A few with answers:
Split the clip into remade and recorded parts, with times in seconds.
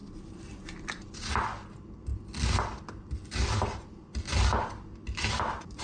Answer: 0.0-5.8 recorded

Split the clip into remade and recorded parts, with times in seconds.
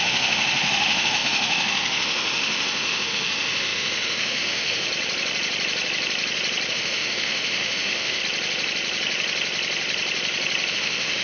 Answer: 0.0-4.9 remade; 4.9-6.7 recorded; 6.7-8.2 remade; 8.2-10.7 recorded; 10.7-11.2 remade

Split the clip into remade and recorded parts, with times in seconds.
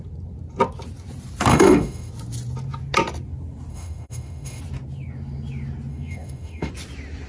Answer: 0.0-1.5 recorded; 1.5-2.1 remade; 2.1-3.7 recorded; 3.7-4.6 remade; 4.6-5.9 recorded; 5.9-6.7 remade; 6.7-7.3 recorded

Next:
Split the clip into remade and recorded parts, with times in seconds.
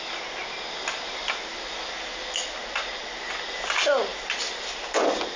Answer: 0.0-5.4 recorded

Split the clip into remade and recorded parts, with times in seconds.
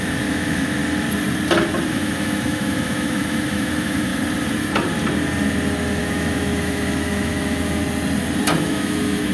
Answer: 0.0-0.8 remade; 0.8-1.9 recorded; 1.9-4.1 remade; 4.1-6.0 recorded; 6.0-7.8 remade; 7.8-8.6 recorded; 8.6-9.3 remade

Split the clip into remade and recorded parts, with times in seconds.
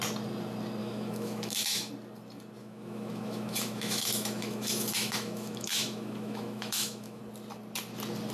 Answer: 0.0-0.8 recorded; 0.8-1.9 remade; 1.9-2.6 recorded; 2.6-7.2 remade; 7.2-8.3 recorded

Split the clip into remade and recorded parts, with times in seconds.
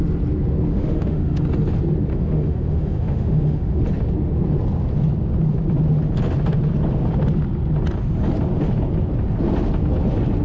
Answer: 0.0-0.7 recorded; 0.7-1.4 remade; 1.4-2.1 recorded; 2.1-3.8 remade; 3.8-10.4 recorded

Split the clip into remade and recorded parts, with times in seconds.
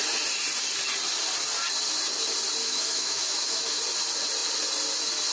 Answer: 0.0-2.6 recorded; 2.6-3.8 remade; 3.8-5.3 recorded